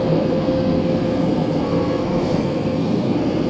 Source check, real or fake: fake